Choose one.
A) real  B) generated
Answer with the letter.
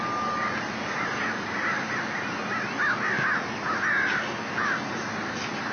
A